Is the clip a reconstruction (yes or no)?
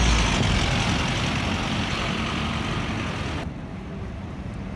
no